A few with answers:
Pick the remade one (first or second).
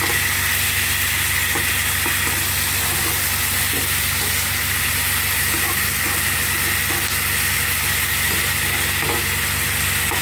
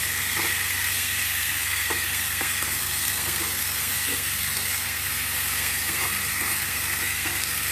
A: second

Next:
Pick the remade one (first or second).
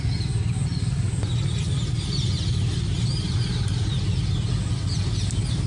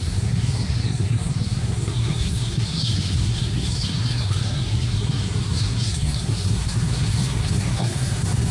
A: second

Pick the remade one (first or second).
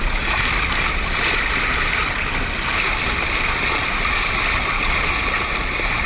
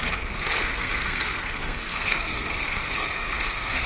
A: second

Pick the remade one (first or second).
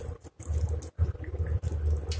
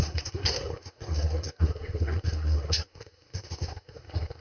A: second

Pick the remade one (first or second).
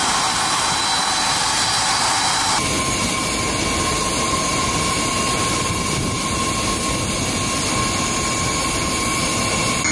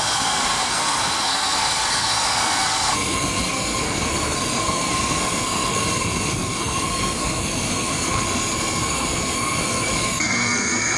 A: second